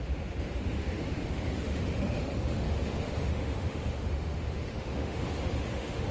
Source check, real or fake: fake